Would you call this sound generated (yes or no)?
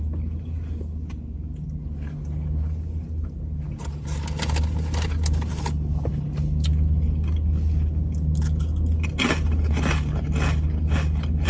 no